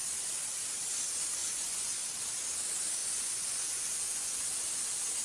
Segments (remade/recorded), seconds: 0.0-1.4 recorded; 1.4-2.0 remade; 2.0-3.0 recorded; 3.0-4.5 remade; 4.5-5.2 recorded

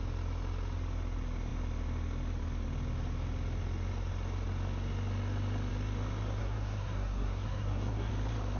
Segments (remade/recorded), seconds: 0.0-6.4 recorded; 6.4-8.1 remade; 8.1-8.6 recorded

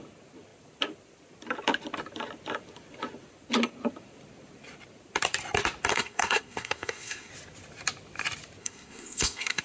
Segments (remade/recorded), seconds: 0.0-5.9 recorded; 5.9-7.3 remade; 7.3-8.6 recorded; 8.6-9.6 remade

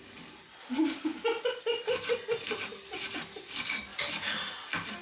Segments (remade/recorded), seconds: 0.0-5.0 recorded

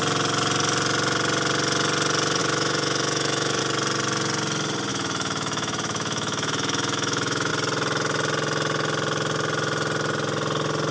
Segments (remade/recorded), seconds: 0.0-2.4 recorded; 2.4-3.6 remade; 3.6-4.9 recorded; 4.9-7.5 remade; 7.5-10.9 recorded

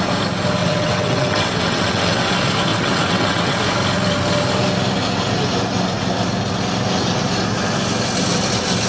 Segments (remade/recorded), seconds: 0.0-0.6 recorded; 0.6-2.3 remade; 2.3-2.7 recorded; 2.7-3.6 remade; 3.6-8.9 recorded